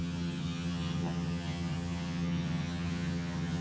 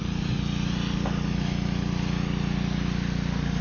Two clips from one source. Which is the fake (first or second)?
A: first